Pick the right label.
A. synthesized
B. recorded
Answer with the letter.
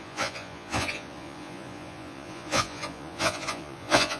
A